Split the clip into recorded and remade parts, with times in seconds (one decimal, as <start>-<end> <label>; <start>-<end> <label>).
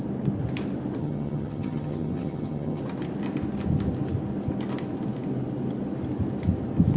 0.0-1.0 recorded; 1.0-2.8 remade; 2.8-7.0 recorded